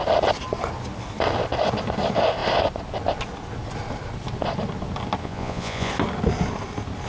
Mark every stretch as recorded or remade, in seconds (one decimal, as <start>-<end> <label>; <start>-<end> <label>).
0.0-5.2 recorded; 5.2-5.9 remade; 5.9-7.1 recorded